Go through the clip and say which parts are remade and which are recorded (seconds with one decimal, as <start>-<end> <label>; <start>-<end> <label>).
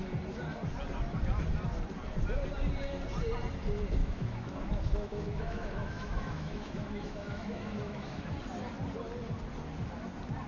0.0-4.0 recorded; 4.0-8.3 remade; 8.3-10.5 recorded